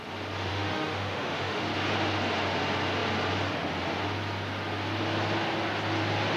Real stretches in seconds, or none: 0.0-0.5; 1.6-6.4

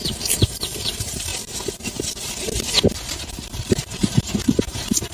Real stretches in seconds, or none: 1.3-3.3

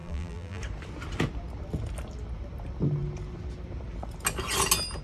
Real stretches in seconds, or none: 0.6-5.0